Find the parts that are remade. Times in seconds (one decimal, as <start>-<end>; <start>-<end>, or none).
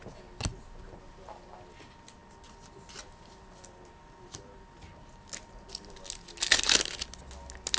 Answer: none